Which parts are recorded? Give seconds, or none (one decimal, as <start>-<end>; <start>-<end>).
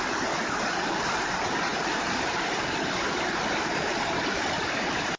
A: 0.0-5.2